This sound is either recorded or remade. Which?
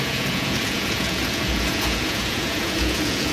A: remade